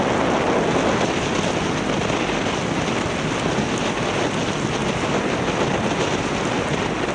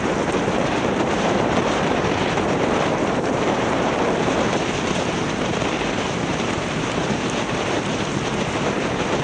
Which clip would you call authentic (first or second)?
first